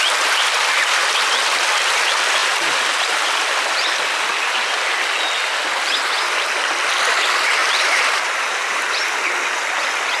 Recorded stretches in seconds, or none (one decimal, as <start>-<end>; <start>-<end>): 0.0-2.4; 3.3-7.6; 8.9-10.2